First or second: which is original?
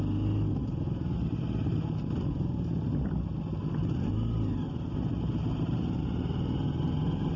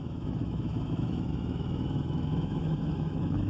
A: first